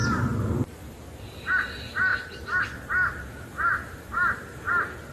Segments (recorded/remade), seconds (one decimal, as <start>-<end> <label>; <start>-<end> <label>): 0.0-5.1 recorded